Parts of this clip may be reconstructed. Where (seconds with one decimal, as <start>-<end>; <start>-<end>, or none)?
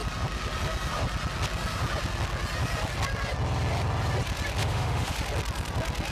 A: 4.6-5.1